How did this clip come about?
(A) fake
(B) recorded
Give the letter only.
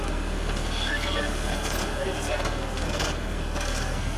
A